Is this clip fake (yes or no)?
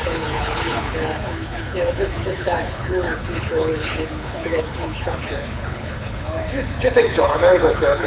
yes